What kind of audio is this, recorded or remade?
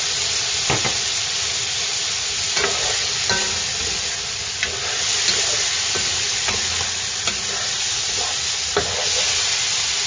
recorded